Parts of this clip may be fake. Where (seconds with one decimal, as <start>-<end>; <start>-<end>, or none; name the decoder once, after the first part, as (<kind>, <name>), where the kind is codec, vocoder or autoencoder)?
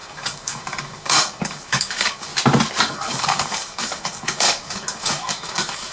0.0-2.3 (codec, DAC); 2.9-5.9